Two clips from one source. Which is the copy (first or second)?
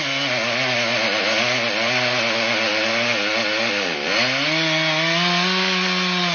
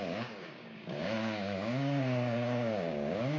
second